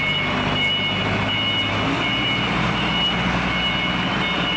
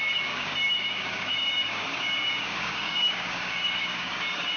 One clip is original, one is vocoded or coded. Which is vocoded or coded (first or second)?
second